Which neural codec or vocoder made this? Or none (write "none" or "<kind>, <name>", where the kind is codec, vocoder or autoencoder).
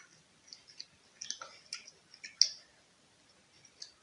none